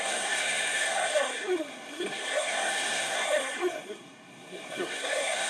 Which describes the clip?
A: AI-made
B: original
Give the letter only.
A